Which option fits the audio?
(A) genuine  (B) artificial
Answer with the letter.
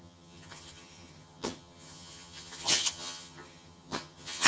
B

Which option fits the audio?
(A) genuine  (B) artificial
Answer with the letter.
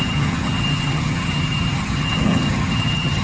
B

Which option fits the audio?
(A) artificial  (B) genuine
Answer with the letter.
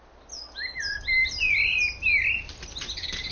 B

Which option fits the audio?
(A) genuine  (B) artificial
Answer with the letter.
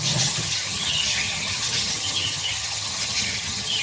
B